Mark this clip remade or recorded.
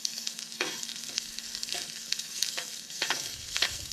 remade